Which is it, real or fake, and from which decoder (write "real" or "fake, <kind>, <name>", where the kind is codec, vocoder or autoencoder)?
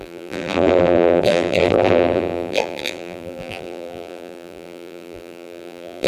fake, vocoder, BigVGAN v2